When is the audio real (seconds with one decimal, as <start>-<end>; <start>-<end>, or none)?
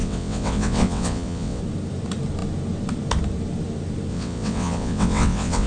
1.6-4.1